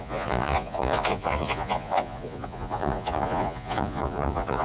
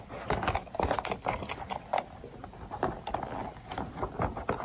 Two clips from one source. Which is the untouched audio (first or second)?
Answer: second